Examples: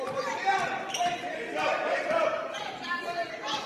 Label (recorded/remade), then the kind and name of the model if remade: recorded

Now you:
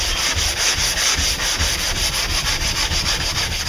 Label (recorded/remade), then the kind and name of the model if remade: recorded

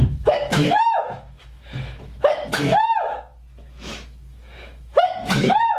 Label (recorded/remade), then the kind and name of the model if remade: remade, autoencoder, DAC-VAE